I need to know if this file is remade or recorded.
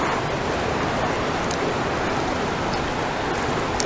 recorded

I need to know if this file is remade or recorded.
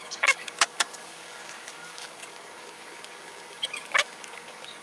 remade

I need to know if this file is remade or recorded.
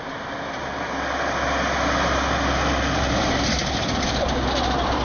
recorded